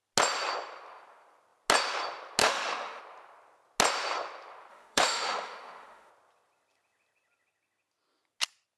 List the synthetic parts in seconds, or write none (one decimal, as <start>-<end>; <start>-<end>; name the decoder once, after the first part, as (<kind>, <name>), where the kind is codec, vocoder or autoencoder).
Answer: 2.4-3.0 (autoencoder, DAC-VAE); 4.7-6.1